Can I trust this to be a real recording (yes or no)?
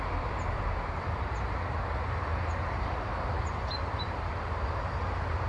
no